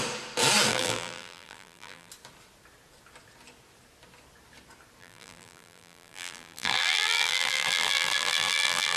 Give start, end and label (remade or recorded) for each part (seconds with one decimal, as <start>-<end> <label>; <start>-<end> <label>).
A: 0.0-0.7 recorded; 0.7-2.1 remade; 2.1-5.0 recorded; 5.0-9.0 remade